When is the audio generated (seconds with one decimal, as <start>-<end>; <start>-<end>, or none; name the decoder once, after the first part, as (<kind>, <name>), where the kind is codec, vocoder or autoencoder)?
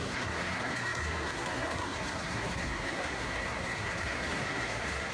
0.0-5.1 (codec, SNAC)